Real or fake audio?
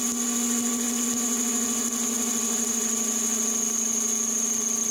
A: real